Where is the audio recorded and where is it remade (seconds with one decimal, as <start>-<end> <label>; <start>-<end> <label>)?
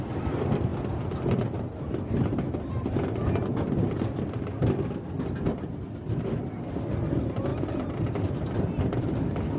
0.0-0.7 remade; 0.7-5.1 recorded; 5.1-9.6 remade